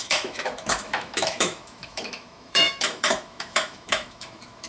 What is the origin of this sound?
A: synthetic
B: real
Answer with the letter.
A